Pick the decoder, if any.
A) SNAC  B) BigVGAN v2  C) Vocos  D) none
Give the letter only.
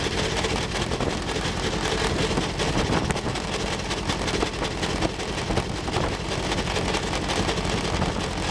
D